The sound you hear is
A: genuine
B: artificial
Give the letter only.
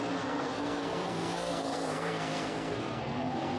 B